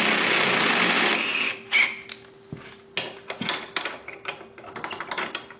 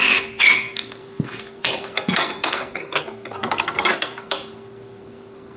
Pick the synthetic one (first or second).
second